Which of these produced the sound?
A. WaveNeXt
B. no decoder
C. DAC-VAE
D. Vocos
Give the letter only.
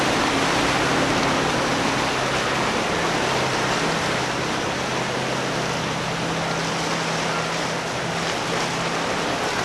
B